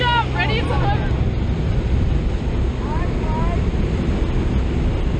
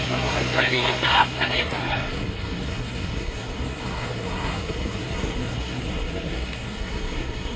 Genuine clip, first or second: first